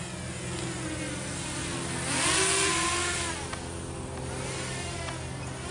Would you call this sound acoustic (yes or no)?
yes